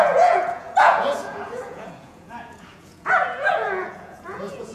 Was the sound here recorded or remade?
remade